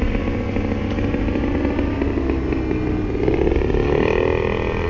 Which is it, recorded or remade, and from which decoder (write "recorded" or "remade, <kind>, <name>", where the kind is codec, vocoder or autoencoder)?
recorded